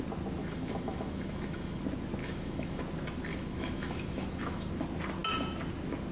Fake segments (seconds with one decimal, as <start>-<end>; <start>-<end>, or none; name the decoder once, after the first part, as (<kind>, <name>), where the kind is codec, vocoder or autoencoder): 0.4-1.8 (autoencoder, DAC-VAE); 2.2-2.8; 3.3-4.7